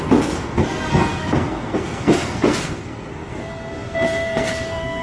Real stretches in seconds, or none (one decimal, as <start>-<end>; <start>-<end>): none